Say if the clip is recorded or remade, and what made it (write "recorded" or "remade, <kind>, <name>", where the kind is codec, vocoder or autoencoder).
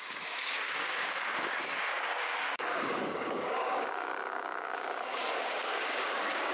remade, codec, DAC